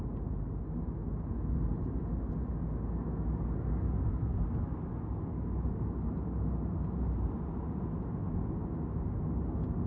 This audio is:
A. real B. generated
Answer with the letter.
A